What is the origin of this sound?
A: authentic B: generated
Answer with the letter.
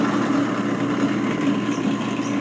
A